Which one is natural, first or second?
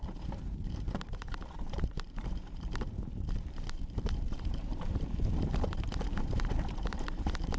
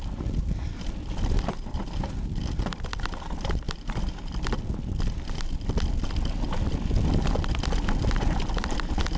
second